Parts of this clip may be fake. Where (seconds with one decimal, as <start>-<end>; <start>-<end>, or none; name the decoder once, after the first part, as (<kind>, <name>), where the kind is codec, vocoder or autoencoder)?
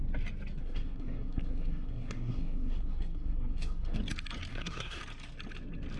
0.6-4.0 (codec, SNAC); 4.5-5.0